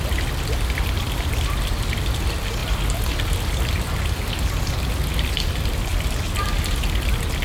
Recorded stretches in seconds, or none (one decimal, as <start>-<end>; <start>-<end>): 0.0-7.4